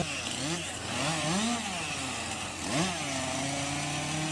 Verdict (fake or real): real